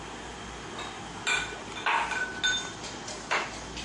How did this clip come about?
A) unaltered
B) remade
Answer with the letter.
A